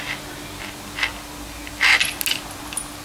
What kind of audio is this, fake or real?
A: real